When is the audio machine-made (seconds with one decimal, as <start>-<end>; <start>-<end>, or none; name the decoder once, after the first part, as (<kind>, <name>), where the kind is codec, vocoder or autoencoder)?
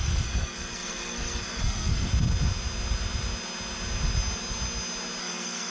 0.0-2.1 (codec, SNAC); 5.2-5.7